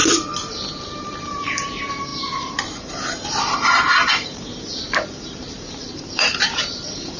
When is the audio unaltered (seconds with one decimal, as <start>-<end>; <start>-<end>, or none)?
0.0-0.8